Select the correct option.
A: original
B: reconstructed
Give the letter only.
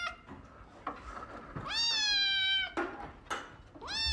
A